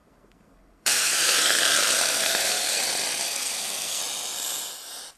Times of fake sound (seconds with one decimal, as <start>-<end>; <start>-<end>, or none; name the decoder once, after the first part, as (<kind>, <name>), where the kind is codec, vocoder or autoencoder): 0.0-2.8 (codec, SNAC); 3.2-4.0